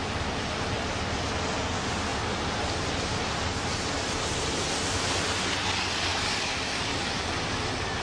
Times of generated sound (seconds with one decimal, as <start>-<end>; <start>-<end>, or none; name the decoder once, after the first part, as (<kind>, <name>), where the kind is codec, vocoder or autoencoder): 6.1-7.2 (codec, DAC)